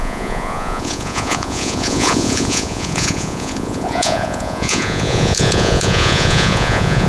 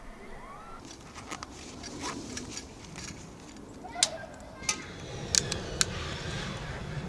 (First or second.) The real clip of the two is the second